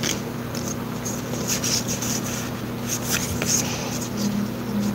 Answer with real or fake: real